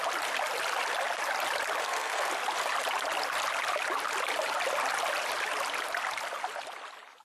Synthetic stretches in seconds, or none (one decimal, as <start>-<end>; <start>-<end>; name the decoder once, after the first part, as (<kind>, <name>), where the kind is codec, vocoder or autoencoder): 1.8-2.3 (codec, SNAC)